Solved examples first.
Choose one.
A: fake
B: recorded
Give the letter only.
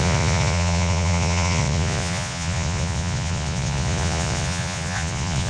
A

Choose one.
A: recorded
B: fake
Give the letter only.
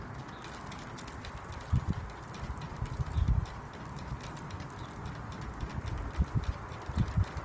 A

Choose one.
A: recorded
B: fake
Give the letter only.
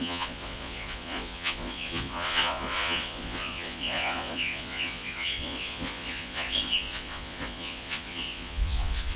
B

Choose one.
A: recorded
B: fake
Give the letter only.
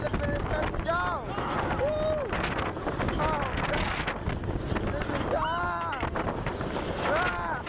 A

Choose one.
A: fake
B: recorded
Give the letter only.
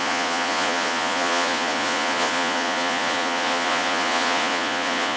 A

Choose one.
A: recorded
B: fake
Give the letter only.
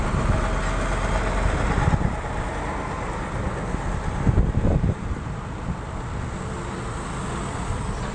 A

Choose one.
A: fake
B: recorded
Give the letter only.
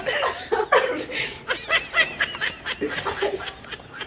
B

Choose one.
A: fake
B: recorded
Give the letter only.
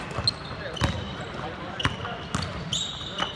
B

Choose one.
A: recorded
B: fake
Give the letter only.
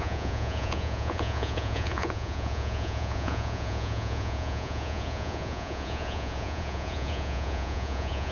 B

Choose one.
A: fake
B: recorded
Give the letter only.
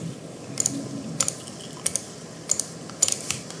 B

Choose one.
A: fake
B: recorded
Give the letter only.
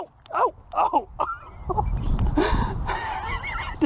B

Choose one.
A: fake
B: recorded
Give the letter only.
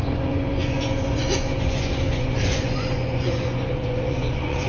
A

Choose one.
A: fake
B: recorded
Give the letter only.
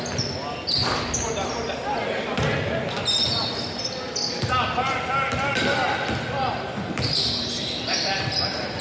B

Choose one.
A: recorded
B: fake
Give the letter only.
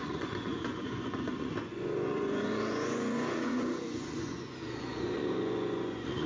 B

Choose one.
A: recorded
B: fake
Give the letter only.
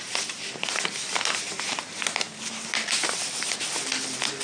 A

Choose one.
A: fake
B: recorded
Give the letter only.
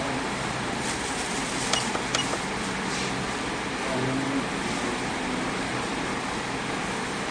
B